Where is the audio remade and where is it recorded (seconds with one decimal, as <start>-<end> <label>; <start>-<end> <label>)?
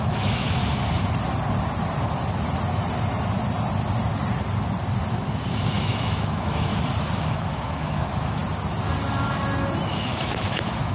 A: 0.0-0.6 remade; 0.6-5.8 recorded; 5.8-6.7 remade; 6.7-7.2 recorded; 7.2-8.4 remade; 8.4-9.9 recorded; 9.9-10.9 remade